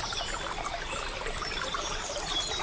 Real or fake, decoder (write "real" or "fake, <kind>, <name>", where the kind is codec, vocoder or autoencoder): real